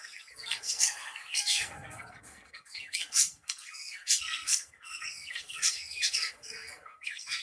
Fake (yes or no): yes